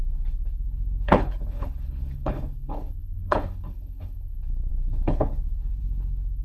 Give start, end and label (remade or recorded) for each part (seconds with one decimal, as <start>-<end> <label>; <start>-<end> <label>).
0.0-6.4 remade